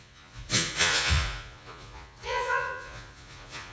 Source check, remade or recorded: remade